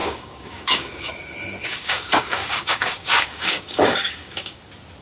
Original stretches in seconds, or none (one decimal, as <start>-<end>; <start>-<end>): 1.1-1.6; 4.6-5.0